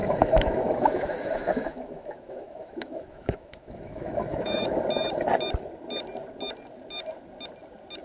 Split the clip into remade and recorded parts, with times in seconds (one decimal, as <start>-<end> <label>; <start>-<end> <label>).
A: 0.0-4.8 remade; 4.8-8.0 recorded